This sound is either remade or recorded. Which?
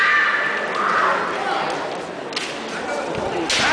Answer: recorded